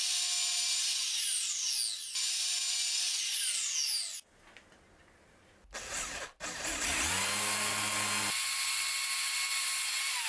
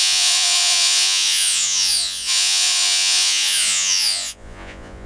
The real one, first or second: first